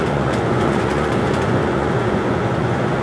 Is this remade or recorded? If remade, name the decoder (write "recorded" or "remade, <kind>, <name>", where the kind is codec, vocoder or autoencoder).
remade, vocoder, Vocos